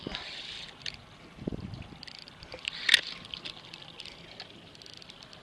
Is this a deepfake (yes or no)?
no